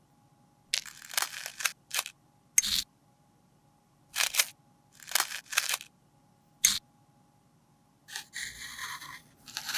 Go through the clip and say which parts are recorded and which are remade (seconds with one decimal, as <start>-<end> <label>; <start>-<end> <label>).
0.0-1.5 recorded; 1.5-2.1 remade; 2.1-8.8 recorded; 8.8-9.8 remade

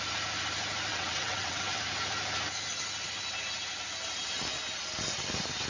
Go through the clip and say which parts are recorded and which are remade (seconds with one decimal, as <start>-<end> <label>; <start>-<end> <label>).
0.0-0.9 recorded; 0.9-1.8 remade; 1.8-5.7 recorded

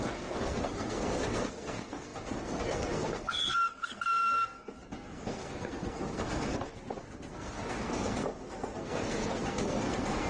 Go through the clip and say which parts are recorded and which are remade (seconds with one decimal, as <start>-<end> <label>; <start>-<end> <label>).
0.0-10.3 remade

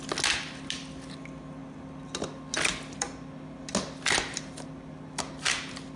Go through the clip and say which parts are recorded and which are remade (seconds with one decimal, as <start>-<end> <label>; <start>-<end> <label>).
0.0-6.0 recorded

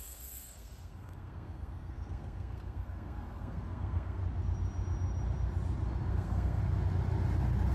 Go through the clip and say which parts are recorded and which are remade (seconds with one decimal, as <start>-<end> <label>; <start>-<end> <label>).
0.0-4.2 remade; 4.2-6.1 recorded; 6.1-6.6 remade; 6.6-7.7 recorded